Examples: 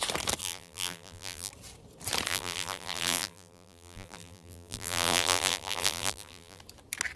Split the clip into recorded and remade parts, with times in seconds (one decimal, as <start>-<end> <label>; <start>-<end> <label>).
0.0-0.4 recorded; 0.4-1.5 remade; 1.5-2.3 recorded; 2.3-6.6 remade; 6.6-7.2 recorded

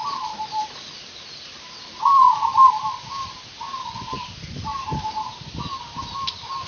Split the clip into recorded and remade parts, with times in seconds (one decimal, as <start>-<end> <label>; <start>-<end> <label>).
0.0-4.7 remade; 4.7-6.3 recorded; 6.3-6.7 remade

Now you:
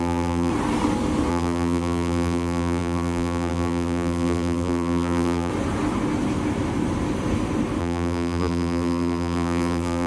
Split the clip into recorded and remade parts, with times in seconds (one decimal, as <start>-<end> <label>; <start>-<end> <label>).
0.0-0.5 remade; 0.5-1.3 recorded; 1.3-5.5 remade; 5.5-7.8 recorded; 7.8-10.1 remade

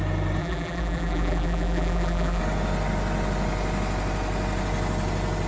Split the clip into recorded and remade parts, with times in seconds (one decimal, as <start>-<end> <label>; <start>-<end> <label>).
0.0-0.4 recorded; 0.4-2.4 remade; 2.4-5.5 recorded

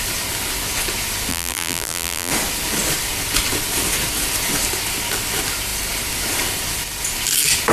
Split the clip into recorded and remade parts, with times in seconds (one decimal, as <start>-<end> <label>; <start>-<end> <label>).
0.0-1.3 recorded; 1.3-2.3 remade; 2.3-7.7 recorded